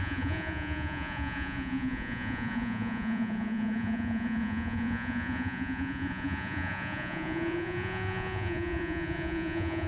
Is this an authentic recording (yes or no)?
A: no